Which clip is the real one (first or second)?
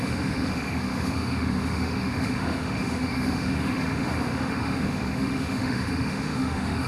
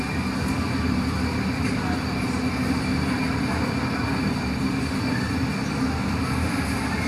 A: second